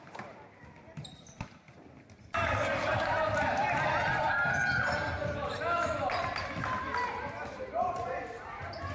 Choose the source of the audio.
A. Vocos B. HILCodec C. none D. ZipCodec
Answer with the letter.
C